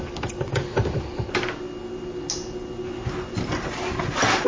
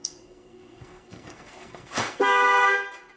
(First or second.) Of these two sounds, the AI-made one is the second